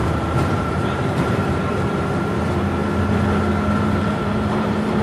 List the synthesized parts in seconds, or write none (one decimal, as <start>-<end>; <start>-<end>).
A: 0.0-2.8; 4.2-5.0